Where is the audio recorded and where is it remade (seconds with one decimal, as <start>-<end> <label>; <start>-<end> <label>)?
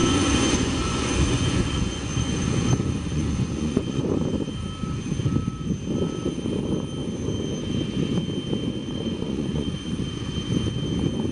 0.0-4.0 remade; 4.0-8.8 recorded; 8.8-10.4 remade; 10.4-11.3 recorded